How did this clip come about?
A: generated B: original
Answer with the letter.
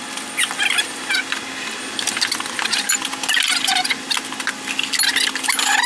B